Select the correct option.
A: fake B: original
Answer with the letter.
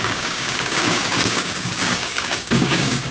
A